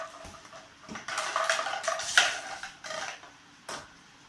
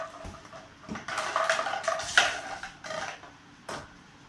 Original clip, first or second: second